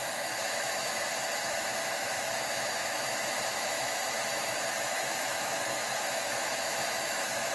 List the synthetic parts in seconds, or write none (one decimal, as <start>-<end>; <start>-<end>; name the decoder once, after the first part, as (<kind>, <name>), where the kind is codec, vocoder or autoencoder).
0.0-7.5 (autoencoder, DAC-VAE)